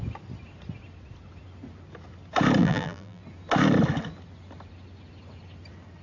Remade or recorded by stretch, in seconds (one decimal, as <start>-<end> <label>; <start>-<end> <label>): 0.0-2.6 recorded; 2.6-3.2 remade; 3.2-6.0 recorded